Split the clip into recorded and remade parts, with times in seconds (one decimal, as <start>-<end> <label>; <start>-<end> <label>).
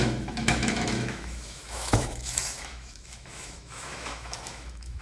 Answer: 0.0-5.0 remade